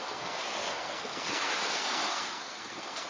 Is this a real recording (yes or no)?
no